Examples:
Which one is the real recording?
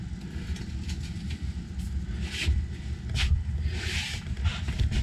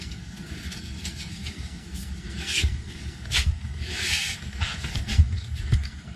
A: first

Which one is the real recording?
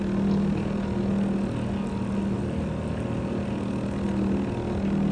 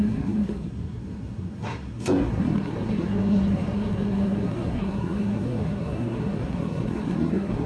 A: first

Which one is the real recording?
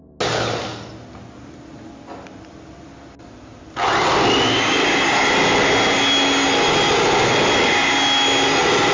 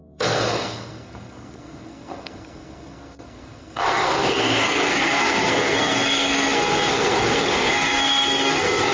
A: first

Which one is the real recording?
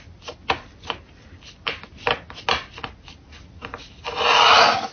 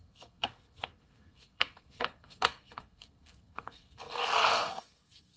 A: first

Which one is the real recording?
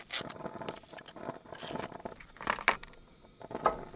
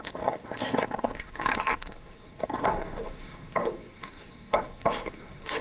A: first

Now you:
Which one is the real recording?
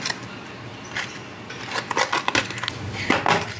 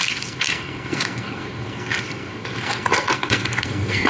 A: first